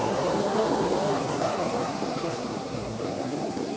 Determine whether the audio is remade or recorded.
remade